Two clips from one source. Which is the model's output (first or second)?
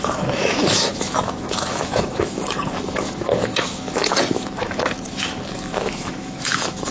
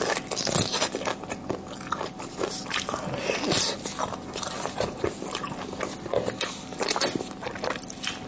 first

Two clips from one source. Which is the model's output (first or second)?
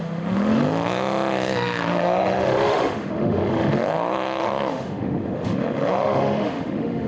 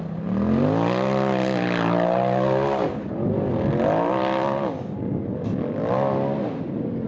first